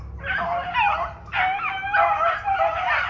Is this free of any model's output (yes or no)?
yes